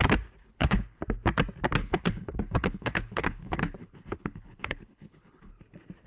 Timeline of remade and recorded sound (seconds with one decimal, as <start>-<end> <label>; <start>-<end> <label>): 0.0-0.4 recorded; 0.4-1.0 remade; 1.0-1.8 recorded; 1.8-5.5 remade; 5.5-6.1 recorded

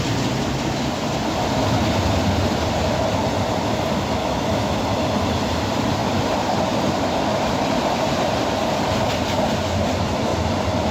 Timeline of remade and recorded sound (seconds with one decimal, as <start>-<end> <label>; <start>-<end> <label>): 0.0-4.2 recorded; 4.2-4.8 remade; 4.8-10.9 recorded

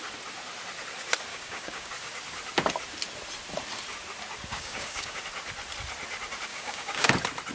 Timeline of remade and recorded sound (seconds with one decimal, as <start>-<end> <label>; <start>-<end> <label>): 0.0-1.3 recorded; 1.3-1.9 remade; 1.9-4.5 recorded; 4.5-5.2 remade; 5.2-6.5 recorded; 6.5-7.1 remade; 7.1-7.5 recorded

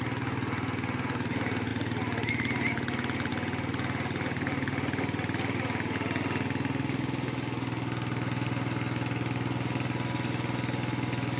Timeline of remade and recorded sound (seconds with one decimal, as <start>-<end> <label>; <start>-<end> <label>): 0.0-11.4 recorded

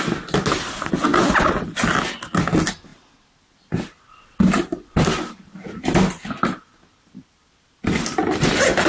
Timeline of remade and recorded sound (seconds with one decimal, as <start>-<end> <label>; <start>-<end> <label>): 0.0-8.9 recorded